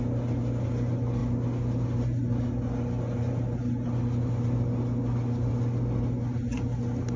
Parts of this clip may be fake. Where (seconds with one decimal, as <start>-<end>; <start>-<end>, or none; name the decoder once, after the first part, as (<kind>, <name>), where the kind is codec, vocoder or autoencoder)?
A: none